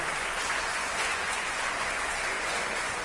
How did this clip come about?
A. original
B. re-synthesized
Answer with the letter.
B